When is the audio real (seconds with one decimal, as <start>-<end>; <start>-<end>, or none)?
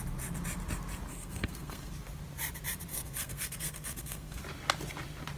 0.0-1.1; 1.9-2.9; 4.4-5.4